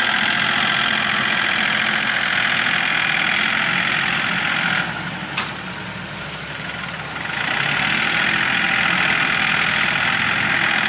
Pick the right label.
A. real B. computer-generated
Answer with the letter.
A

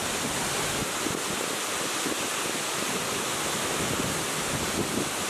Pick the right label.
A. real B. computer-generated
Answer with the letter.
A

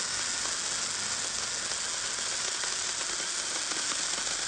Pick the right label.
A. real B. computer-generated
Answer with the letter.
A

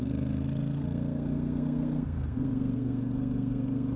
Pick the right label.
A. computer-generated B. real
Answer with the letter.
A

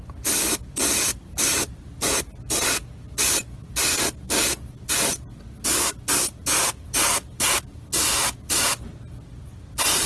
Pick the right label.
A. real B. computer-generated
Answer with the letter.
A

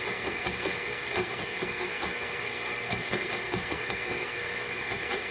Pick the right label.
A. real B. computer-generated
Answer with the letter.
B